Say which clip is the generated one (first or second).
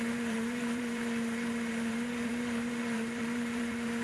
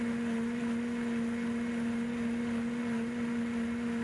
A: first